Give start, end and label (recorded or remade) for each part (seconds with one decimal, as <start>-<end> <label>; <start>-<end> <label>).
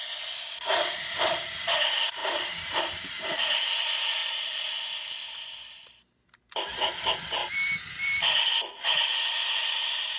0.0-7.4 recorded; 7.4-8.2 remade; 8.2-10.2 recorded